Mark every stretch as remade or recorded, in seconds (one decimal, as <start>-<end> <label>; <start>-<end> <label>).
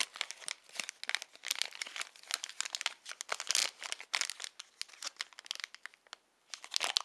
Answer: 0.0-7.0 recorded